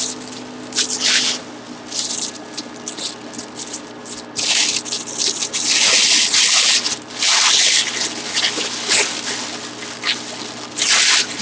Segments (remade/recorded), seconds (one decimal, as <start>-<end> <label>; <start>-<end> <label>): 0.0-11.4 recorded